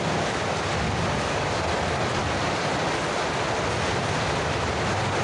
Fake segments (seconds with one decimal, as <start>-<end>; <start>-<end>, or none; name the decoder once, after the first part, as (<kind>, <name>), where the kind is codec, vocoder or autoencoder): none